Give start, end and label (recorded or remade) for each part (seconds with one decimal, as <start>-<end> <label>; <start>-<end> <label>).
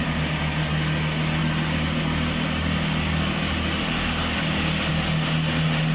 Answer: 0.0-5.9 recorded